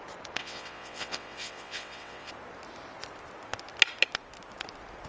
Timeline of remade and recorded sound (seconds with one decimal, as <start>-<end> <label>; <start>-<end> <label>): 0.0-0.4 recorded; 0.4-2.3 remade; 2.3-5.1 recorded